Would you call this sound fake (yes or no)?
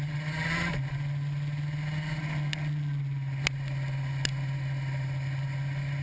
no